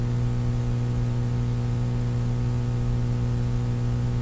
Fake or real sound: real